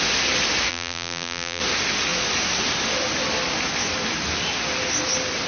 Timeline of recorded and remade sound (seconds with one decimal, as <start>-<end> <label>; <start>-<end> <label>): 0.0-0.7 recorded; 0.7-1.6 remade; 1.6-5.5 recorded

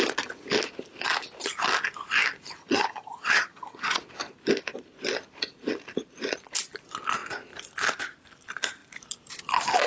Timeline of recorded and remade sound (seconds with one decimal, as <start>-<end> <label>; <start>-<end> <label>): 0.0-2.6 recorded; 2.6-4.0 remade; 4.0-9.9 recorded

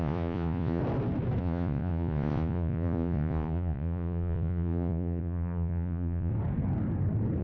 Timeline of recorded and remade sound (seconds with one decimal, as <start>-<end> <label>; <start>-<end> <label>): 0.0-0.8 remade; 0.8-1.4 recorded; 1.4-6.3 remade; 6.3-7.4 recorded